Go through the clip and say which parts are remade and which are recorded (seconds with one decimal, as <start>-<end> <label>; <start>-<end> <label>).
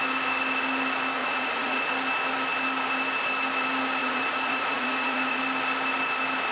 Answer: 0.0-1.2 recorded; 1.2-1.9 remade; 1.9-4.0 recorded; 4.0-5.4 remade; 5.4-6.5 recorded